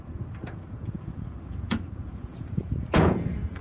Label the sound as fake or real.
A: fake